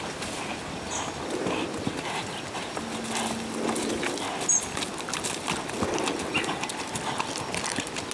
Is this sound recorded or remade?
recorded